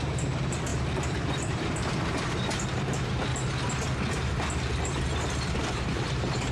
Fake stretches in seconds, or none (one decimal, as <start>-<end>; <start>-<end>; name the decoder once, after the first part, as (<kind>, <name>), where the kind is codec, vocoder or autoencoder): 0.0-3.3 (vocoder, BigVGAN v2); 4.1-6.5